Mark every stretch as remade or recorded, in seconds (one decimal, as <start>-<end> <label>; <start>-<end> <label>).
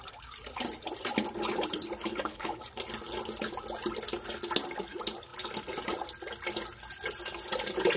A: 0.0-2.1 recorded; 2.1-2.6 remade; 2.6-8.0 recorded